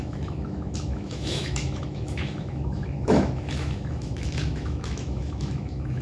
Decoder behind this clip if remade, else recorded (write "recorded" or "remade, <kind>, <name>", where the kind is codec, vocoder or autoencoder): remade, autoencoder, DAC-VAE